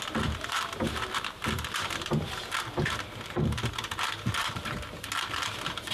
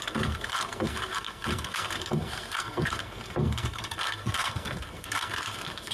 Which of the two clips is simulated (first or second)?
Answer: second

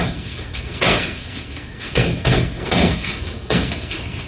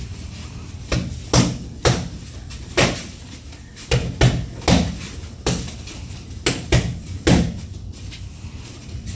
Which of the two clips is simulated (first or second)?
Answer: first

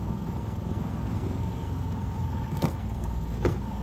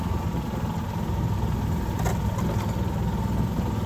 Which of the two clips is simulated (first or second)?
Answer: first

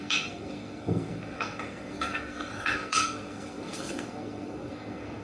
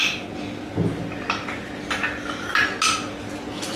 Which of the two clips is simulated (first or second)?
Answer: first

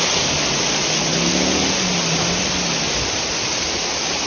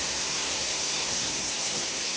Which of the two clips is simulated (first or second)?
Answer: second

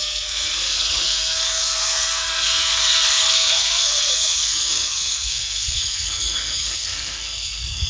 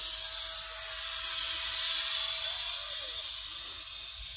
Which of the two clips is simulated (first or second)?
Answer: first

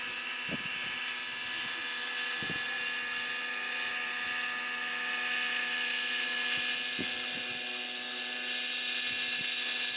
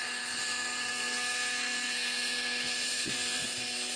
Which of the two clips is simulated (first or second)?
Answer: second